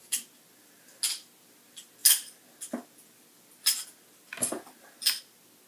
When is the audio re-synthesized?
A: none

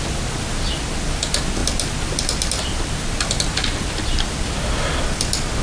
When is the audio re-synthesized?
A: none

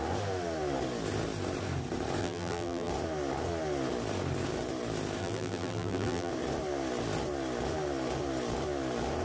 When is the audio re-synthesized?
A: 2.2-2.9 (vocoder, BigVGAN v2); 5.2-6.3

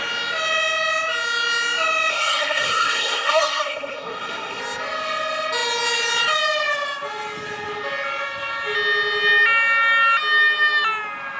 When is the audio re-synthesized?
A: 2.1-4.6 (codec, SNAC)